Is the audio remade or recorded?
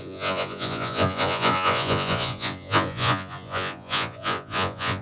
remade